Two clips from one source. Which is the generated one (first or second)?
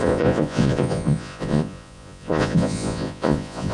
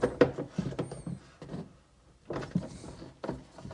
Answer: first